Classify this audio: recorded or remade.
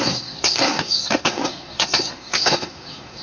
remade